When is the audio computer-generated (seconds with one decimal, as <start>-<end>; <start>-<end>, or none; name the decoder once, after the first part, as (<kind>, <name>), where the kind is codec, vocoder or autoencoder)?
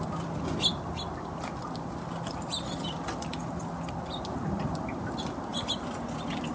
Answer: none